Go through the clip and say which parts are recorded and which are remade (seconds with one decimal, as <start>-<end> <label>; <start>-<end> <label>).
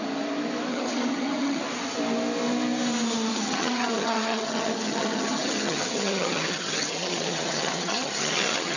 0.0-0.7 recorded; 0.7-1.6 remade; 1.6-3.3 recorded; 3.3-8.8 remade